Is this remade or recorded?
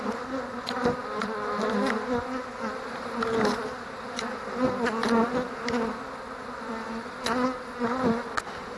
recorded